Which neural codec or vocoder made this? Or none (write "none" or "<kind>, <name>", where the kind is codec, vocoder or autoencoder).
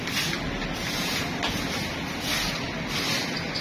none